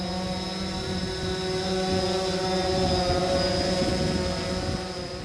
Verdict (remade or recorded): recorded